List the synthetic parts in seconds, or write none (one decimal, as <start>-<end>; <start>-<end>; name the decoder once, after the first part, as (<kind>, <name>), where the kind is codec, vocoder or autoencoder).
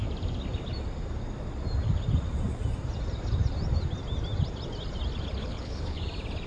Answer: 5.4-6.0 (codec, HILCodec)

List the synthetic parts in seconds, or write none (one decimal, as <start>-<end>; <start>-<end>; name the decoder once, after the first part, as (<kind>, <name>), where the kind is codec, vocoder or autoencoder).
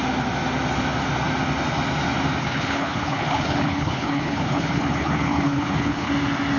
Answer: 2.4-6.1 (codec, HILCodec)